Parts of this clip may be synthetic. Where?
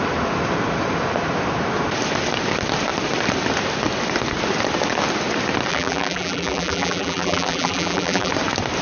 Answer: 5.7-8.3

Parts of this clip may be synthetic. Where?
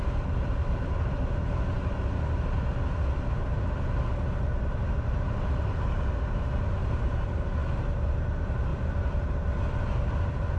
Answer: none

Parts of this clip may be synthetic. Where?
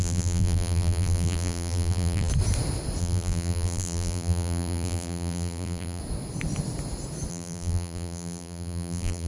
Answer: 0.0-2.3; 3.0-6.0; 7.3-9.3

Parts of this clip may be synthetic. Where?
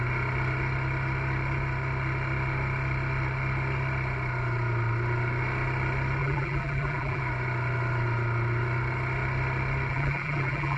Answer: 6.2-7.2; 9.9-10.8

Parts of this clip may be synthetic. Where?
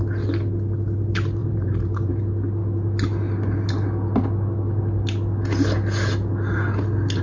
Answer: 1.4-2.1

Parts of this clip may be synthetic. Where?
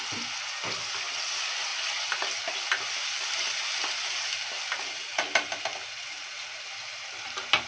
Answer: none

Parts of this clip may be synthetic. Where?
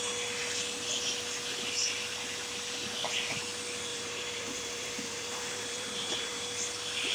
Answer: 3.9-6.4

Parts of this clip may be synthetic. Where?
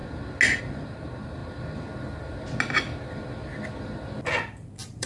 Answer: 0.6-1.4; 4.3-5.1